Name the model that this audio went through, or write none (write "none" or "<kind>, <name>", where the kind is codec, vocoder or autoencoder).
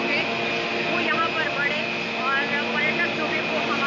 none